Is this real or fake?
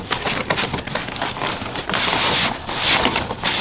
real